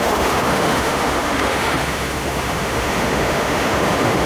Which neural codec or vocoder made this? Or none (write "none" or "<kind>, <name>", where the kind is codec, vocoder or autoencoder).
autoencoder, DAC-VAE